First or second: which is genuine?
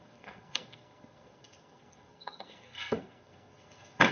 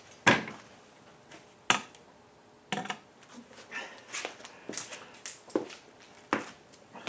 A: second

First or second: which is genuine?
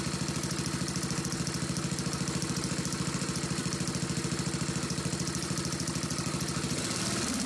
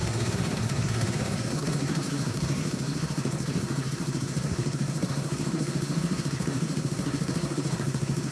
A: first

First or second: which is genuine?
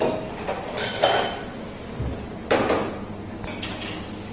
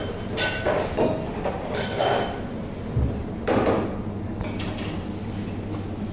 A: first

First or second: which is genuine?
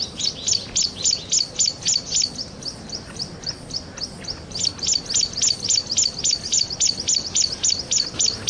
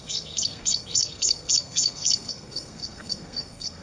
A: first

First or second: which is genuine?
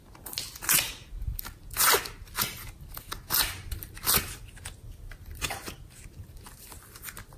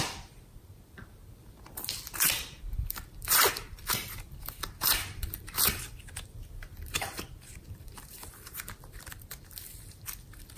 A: first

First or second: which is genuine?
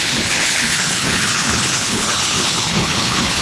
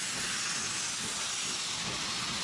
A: second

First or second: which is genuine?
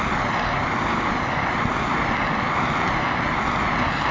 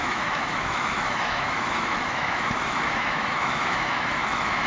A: first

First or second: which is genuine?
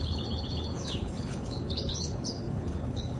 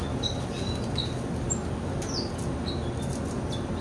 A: second